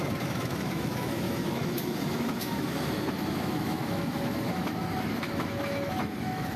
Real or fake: fake